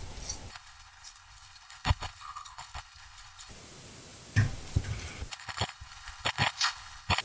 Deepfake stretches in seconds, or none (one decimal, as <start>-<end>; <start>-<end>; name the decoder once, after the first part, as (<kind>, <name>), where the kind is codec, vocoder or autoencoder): 0.5-3.5 (codec, HILCodec); 5.3-7.2